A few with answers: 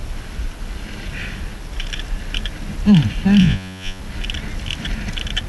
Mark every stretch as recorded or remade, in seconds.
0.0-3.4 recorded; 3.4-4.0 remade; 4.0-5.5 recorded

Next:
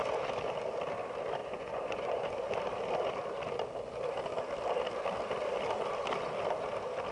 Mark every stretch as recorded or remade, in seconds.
0.0-1.4 recorded; 1.4-2.3 remade; 2.3-7.1 recorded

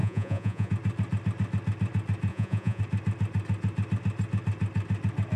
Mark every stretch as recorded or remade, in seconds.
0.0-0.7 remade; 0.7-2.3 recorded; 2.3-2.8 remade; 2.8-5.4 recorded